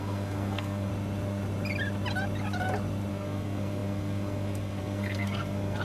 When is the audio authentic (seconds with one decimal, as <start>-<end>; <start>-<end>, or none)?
0.9-3.1